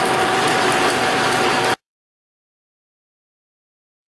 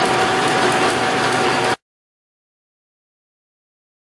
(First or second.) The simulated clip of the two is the first